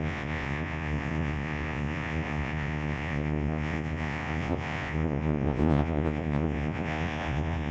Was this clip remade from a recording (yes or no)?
yes